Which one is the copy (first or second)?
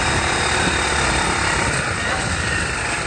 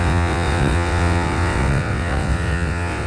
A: second